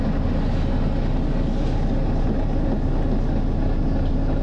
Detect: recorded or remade recorded